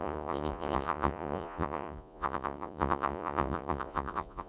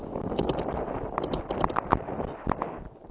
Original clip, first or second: second